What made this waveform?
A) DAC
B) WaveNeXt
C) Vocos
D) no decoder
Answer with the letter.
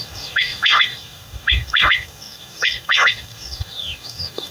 A